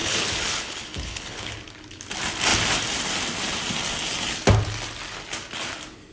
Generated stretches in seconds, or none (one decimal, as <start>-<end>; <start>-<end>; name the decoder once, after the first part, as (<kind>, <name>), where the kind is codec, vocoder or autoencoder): 0.0-1.5 (codec, HILCodec)

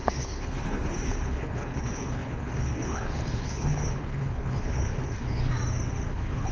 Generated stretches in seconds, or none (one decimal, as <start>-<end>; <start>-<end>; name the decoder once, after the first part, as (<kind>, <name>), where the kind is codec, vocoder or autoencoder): 0.0-5.5 (codec, HILCodec); 6.1-6.5

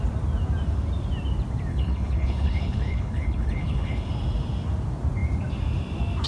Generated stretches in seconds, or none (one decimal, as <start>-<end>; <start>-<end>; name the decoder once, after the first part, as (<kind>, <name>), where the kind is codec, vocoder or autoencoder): 1.7-4.1 (codec, HILCodec)

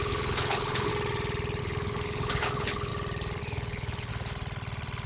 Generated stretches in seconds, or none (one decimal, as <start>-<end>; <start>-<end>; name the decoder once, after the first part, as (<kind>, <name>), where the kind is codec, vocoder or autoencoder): 0.0-0.9 (codec, HILCodec); 1.6-2.9; 3.4-4.1

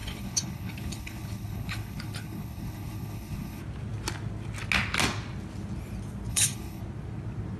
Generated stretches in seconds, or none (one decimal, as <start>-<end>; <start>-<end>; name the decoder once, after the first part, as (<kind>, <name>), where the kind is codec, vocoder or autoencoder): 0.0-3.6 (codec, HILCodec); 6.3-6.8

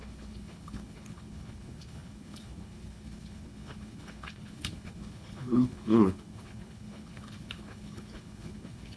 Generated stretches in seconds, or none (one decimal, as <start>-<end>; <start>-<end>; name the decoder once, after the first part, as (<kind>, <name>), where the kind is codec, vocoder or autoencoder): 0.0-9.0 (codec, HILCodec)